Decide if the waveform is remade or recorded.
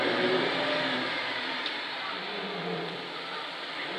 remade